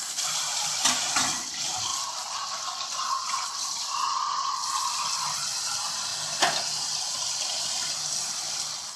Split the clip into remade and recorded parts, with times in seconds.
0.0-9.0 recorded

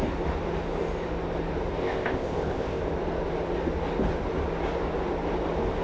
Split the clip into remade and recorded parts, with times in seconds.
0.0-1.8 recorded; 1.8-2.8 remade; 2.8-5.8 recorded

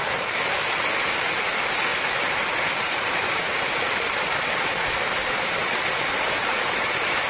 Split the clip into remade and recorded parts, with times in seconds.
0.0-7.3 recorded